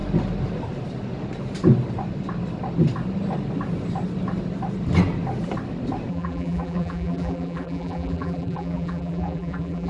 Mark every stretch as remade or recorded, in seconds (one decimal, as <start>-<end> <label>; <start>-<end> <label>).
0.0-6.1 recorded; 6.1-9.9 remade

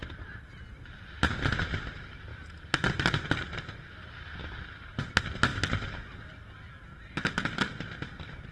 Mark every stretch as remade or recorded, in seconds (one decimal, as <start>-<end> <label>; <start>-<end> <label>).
0.0-8.5 recorded

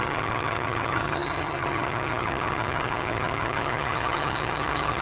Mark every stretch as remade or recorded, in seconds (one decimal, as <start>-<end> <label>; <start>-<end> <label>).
0.0-5.0 remade

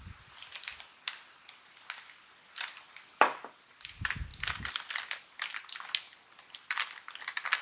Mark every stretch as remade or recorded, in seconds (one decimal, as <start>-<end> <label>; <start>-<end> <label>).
0.0-7.6 recorded